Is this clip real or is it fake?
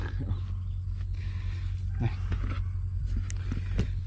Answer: real